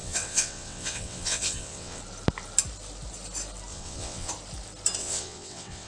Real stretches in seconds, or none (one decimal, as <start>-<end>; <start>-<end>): 2.0-3.7; 4.3-5.0